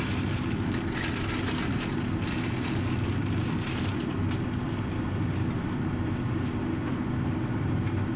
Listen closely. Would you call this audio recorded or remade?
recorded